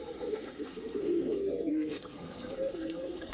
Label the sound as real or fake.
fake